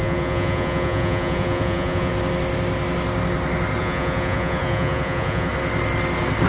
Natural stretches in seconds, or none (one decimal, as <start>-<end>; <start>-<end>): 2.1-3.8; 5.5-6.5